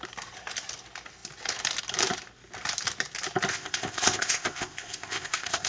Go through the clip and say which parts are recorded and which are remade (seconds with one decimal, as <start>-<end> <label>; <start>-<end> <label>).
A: 0.0-3.5 recorded; 3.5-5.7 remade